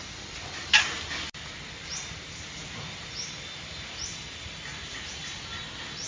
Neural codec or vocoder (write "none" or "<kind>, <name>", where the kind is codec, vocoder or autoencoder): none